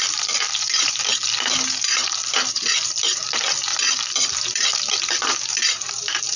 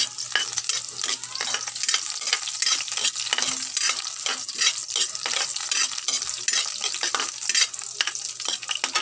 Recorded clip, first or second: second